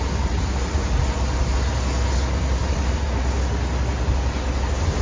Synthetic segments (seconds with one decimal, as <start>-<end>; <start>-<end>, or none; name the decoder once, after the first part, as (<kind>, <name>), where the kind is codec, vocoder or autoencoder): 2.6-3.3 (vocoder, BigVGAN v2)